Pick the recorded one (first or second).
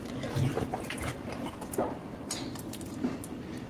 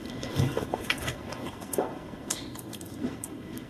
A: first